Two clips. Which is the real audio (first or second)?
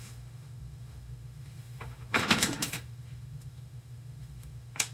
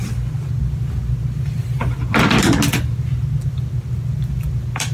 second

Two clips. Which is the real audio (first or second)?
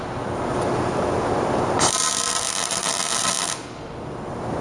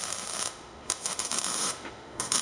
first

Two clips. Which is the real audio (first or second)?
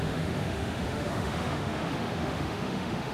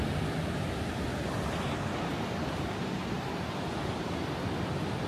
second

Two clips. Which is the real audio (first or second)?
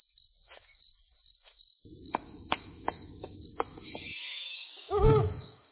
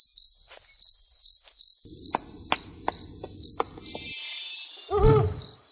second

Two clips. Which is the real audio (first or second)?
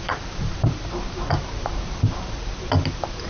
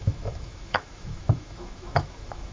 first